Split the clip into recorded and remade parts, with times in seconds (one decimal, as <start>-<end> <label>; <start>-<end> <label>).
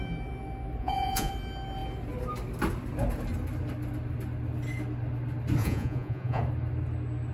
0.0-0.8 recorded; 0.8-1.3 remade; 1.3-5.6 recorded; 5.6-6.4 remade; 6.4-7.3 recorded